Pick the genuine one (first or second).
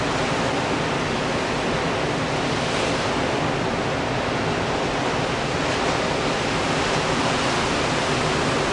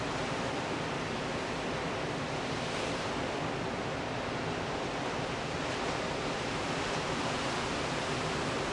first